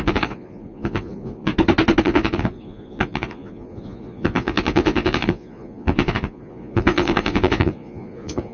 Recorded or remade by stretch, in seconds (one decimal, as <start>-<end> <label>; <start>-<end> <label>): 0.0-1.5 remade; 1.5-2.0 recorded; 2.0-8.5 remade